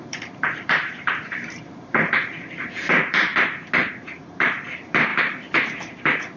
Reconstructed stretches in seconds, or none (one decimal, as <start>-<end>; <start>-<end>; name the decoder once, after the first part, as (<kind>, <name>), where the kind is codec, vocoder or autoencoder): 0.0-3.3 (vocoder, BigVGAN v2); 3.9-6.4